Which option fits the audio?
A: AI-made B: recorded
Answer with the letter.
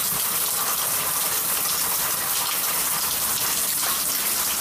B